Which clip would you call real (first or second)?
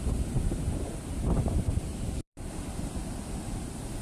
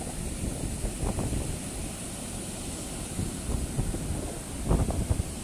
second